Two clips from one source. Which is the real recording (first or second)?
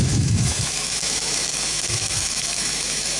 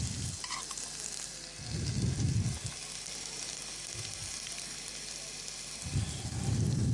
second